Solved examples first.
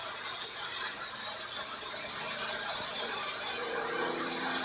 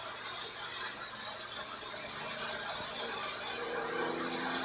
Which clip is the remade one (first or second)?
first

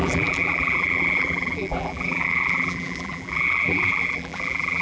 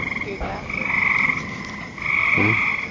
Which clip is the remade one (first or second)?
first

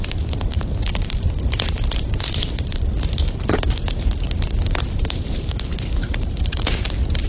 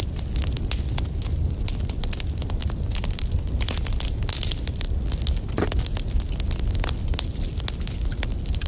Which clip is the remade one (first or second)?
first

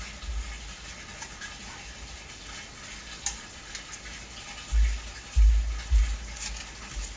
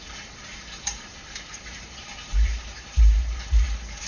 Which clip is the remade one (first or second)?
second